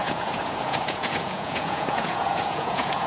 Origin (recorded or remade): remade